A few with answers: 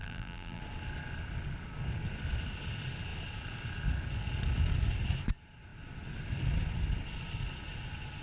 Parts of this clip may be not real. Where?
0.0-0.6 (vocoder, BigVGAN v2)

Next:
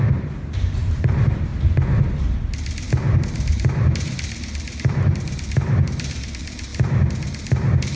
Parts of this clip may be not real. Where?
0.0-1.5 (vocoder, BigVGAN v2); 2.9-8.0